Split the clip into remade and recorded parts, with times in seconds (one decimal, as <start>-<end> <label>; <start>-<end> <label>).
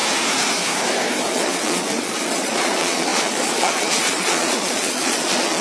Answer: 0.0-1.3 recorded; 1.3-5.6 remade